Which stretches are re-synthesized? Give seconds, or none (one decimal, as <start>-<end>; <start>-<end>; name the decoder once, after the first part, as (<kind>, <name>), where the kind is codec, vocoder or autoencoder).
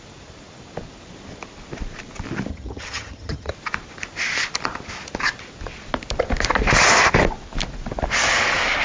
2.5-3.5 (vocoder, HiFi-GAN)